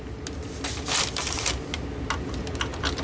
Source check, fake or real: real